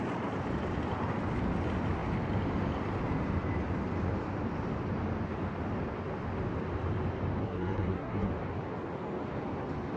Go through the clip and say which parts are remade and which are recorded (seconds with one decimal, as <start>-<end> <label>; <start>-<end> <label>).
0.0-7.4 recorded; 7.4-8.3 remade; 8.3-10.0 recorded